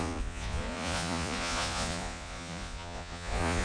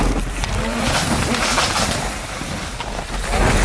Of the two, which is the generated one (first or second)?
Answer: first